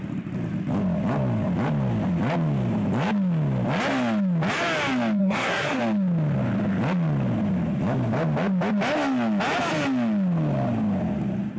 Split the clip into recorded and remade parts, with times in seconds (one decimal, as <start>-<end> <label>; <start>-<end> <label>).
0.0-5.2 recorded; 5.2-5.8 remade; 5.8-11.6 recorded